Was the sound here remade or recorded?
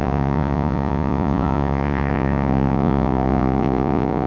remade